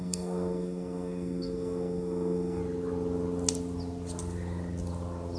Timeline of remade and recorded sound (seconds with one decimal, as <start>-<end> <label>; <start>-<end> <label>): 0.0-2.6 remade; 2.6-5.4 recorded